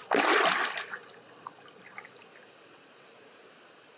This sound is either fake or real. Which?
real